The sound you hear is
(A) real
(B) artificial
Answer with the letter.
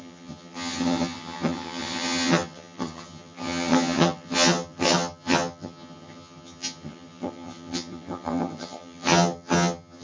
B